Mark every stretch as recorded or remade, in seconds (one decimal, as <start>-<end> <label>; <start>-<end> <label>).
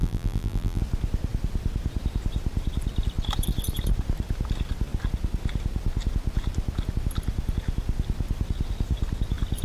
0.0-0.8 remade; 0.8-9.6 recorded